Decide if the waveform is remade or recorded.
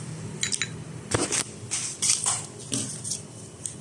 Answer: recorded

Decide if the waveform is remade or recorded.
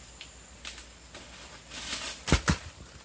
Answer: recorded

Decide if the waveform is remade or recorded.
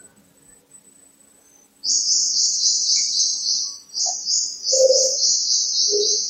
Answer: recorded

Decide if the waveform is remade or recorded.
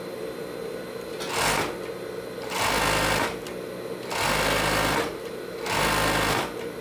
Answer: recorded